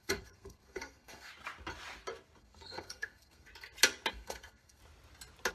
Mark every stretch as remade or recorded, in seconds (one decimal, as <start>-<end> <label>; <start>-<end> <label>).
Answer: 0.0-1.3 remade; 1.3-2.4 recorded; 2.4-3.5 remade; 3.5-4.1 recorded; 4.1-4.8 remade; 4.8-5.5 recorded